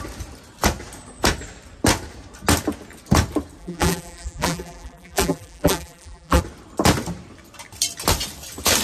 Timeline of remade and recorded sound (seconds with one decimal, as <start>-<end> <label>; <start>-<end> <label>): 0.0-3.6 recorded; 3.6-6.4 remade; 6.4-8.8 recorded